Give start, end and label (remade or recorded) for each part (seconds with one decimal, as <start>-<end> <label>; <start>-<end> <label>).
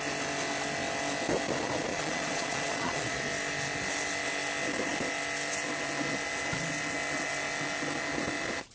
0.0-1.9 recorded; 1.9-3.2 remade; 3.2-8.7 recorded